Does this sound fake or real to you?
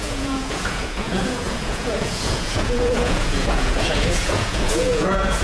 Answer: fake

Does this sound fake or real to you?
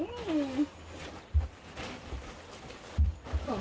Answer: real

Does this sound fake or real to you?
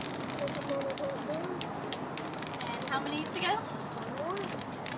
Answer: real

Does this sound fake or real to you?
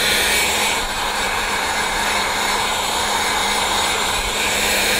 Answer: fake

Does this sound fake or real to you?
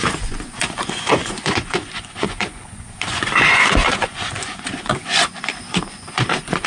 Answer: fake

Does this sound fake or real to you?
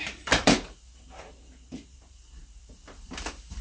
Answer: fake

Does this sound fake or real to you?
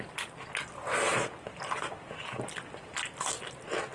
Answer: real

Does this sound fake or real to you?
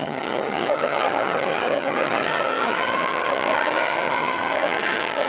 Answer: fake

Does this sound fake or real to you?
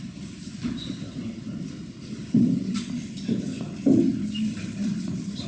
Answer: fake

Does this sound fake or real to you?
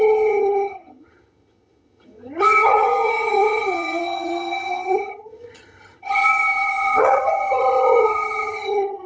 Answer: fake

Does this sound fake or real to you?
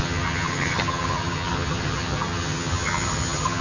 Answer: fake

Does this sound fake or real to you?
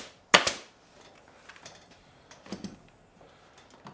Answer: real